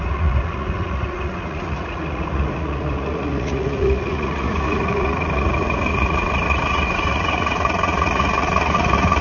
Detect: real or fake fake